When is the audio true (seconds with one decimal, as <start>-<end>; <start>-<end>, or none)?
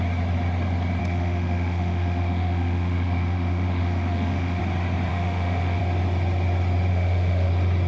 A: 0.0-1.0; 4.6-5.1; 5.8-6.9; 7.5-7.9